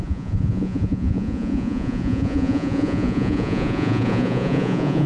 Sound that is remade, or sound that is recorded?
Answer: remade